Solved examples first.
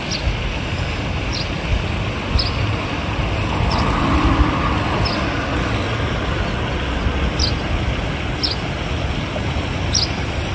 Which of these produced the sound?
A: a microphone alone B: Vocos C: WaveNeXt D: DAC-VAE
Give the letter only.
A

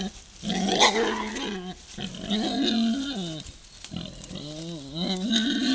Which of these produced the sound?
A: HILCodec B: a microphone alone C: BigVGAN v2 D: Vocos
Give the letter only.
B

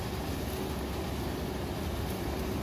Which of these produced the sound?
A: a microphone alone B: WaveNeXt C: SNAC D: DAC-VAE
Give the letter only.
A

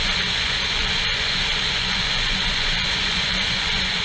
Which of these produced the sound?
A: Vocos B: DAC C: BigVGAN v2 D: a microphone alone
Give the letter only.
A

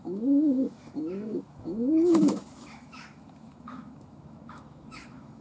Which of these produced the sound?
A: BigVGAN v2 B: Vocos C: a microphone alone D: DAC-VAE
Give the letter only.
D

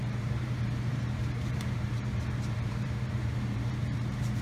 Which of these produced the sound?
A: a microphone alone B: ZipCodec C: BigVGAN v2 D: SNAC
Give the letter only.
C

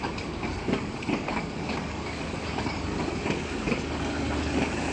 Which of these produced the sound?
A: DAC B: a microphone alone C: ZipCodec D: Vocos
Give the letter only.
A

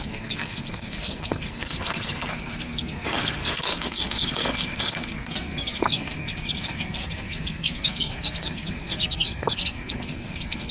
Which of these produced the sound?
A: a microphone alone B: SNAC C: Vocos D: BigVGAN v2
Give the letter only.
B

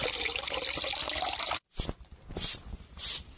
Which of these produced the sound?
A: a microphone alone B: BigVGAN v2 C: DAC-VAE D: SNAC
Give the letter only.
A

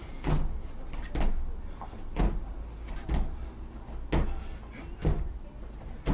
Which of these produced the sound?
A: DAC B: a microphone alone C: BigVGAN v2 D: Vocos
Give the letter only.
B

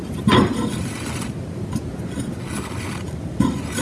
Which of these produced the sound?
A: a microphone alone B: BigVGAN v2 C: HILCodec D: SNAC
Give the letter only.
A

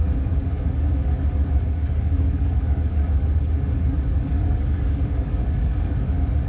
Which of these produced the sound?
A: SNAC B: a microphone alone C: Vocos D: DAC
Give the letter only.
D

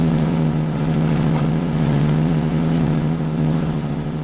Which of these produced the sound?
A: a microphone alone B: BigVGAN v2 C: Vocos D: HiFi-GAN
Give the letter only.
C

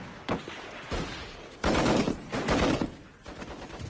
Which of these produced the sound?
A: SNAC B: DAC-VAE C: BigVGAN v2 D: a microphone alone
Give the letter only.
D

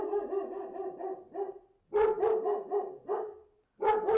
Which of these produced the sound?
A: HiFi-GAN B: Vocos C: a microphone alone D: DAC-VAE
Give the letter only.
C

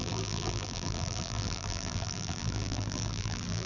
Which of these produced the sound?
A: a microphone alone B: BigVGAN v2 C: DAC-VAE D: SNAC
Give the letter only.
B